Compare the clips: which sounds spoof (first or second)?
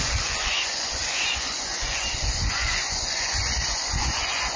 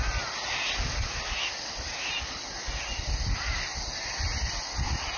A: first